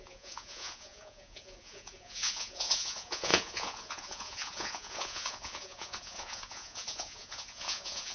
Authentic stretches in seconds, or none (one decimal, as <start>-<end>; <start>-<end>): none